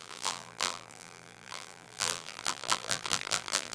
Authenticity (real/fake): fake